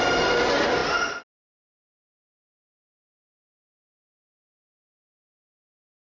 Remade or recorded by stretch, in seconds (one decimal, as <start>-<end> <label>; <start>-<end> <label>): 0.0-6.2 recorded